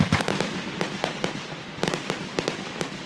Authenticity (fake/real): fake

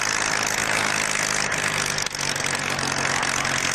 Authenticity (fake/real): real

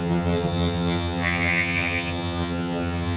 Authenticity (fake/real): fake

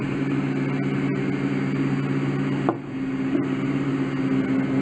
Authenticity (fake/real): real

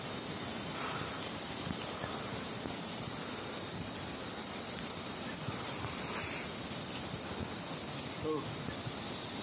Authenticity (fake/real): real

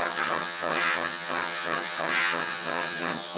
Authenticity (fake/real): fake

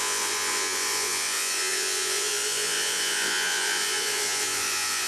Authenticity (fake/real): fake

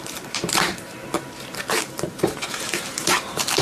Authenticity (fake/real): fake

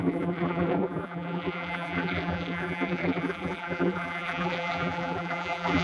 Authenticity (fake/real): fake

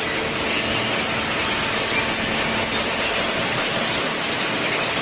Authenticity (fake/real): real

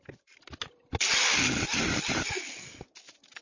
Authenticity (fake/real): real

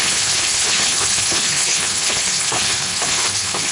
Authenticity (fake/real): fake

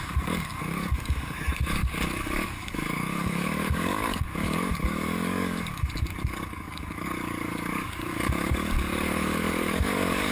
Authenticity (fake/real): fake